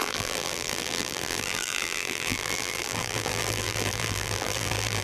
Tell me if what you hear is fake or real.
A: fake